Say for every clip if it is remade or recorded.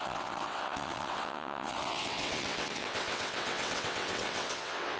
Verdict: remade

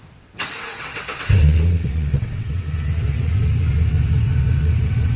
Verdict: remade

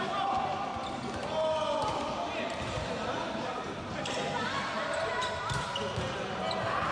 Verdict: recorded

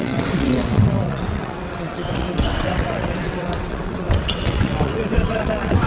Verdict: remade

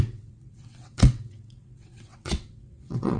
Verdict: remade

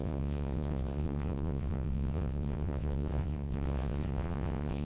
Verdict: remade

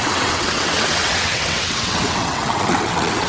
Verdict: remade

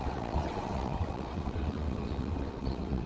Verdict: remade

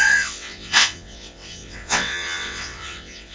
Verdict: remade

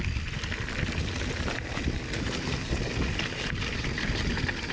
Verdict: recorded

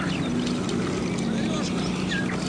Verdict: recorded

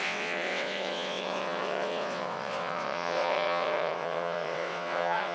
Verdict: remade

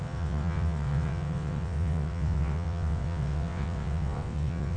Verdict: remade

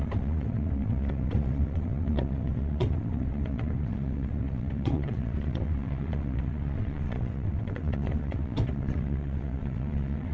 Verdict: remade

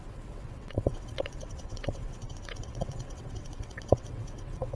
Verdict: remade